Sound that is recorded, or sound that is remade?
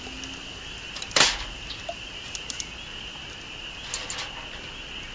recorded